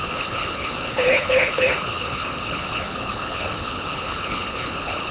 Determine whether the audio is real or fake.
fake